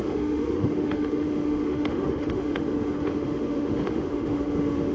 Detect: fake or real fake